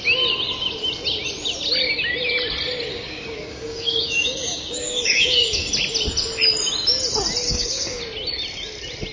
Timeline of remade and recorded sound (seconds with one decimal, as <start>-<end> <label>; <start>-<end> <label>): 0.0-2.9 recorded; 2.9-5.7 remade; 5.7-7.4 recorded; 7.4-8.0 remade; 8.0-9.1 recorded